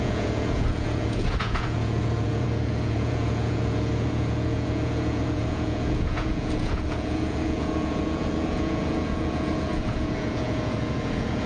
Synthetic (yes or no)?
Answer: yes